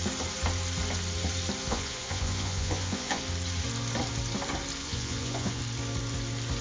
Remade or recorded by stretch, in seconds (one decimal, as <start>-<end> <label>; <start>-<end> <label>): 0.0-1.7 recorded; 1.7-3.2 remade; 3.2-4.8 recorded; 4.8-5.6 remade; 5.6-6.6 recorded